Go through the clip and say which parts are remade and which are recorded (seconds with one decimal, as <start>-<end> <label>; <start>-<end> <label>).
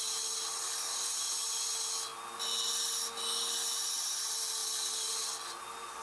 0.0-4.6 recorded; 4.6-5.1 remade; 5.1-6.0 recorded